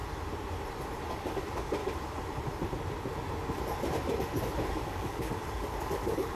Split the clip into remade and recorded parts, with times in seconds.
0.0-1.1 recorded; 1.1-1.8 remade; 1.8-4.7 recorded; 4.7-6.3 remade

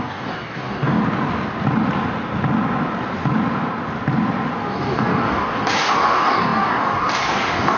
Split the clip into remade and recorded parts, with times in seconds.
0.0-1.0 remade; 1.0-4.7 recorded; 4.7-7.8 remade

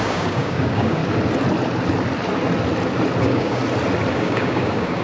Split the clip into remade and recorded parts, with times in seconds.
0.0-1.0 remade; 1.0-3.2 recorded; 3.2-3.6 remade; 3.6-4.1 recorded; 4.1-5.0 remade

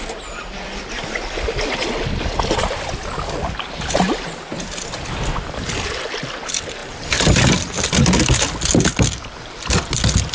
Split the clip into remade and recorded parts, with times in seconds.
0.0-10.3 recorded

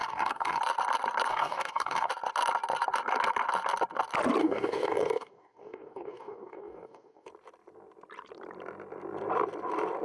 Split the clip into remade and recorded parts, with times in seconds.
0.0-0.6 remade; 0.6-1.3 recorded; 1.3-2.1 remade; 2.1-4.4 recorded; 4.4-7.3 remade; 7.3-10.0 recorded

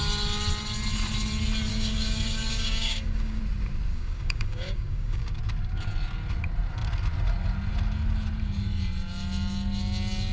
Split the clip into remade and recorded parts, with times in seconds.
0.0-1.7 recorded; 1.7-3.4 remade; 3.4-3.9 recorded; 3.9-5.3 remade; 5.3-10.3 recorded

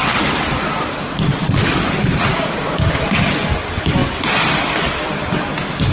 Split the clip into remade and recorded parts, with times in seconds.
0.0-2.3 recorded; 2.3-3.0 remade; 3.0-5.9 recorded